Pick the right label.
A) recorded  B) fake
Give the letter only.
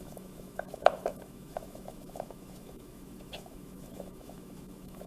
B